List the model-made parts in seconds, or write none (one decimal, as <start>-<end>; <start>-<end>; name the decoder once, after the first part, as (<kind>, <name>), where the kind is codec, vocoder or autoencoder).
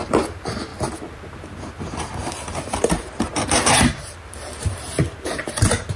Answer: 0.0-0.7 (vocoder, BigVGAN v2); 1.4-6.0